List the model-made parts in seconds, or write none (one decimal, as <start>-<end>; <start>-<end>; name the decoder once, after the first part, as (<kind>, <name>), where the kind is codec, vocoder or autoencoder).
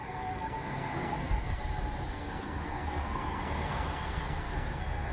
0.0-1.6 (codec, SNAC); 2.1-5.1